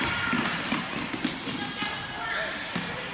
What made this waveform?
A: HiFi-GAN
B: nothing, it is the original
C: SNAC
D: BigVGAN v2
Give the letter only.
D